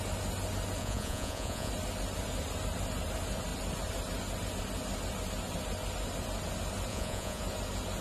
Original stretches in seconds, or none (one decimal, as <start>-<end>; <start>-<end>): 0.0-0.8; 1.7-6.9; 7.4-8.0